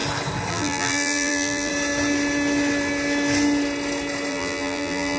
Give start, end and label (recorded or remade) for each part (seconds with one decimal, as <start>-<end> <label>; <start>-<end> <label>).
0.0-0.5 recorded; 0.5-1.7 remade; 1.7-4.3 recorded; 4.3-5.2 remade